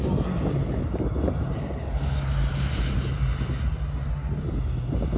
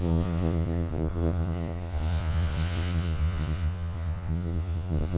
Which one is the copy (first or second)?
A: second